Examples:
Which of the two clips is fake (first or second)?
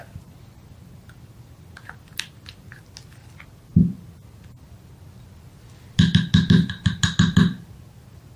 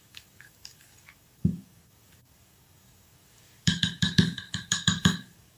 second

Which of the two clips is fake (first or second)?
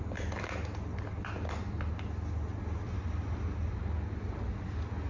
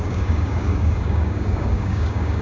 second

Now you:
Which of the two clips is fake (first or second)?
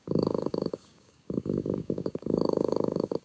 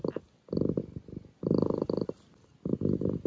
first